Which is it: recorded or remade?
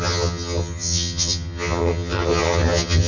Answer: remade